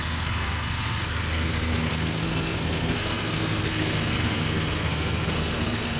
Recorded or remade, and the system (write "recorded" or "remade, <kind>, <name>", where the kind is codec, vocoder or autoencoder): remade, codec, SNAC